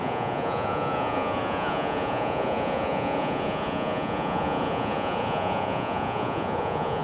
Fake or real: fake